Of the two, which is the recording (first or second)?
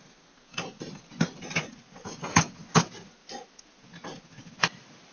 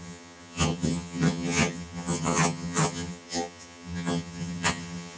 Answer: first